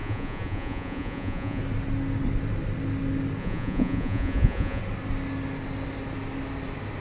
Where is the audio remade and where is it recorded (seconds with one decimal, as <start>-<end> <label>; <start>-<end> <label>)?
0.0-1.6 remade; 1.6-3.4 recorded; 3.4-4.8 remade; 4.8-7.0 recorded